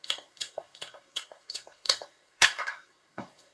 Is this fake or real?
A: fake